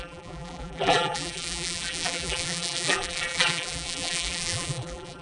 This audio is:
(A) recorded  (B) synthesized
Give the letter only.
B